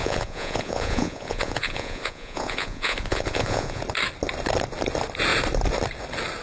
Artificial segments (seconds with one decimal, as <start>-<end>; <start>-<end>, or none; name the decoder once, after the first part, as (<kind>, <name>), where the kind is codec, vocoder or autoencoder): 0.0-3.8 (vocoder, Vocos)